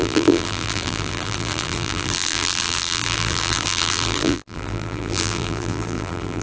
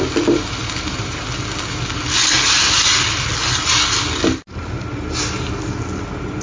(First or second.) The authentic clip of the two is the second